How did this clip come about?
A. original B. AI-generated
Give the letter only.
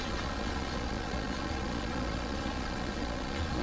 B